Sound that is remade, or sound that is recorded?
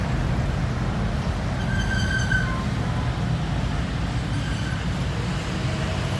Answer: recorded